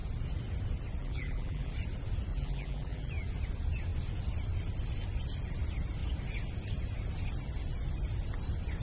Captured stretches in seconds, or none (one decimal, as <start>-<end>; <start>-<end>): 0.0-1.0; 1.7-2.3; 3.1-8.8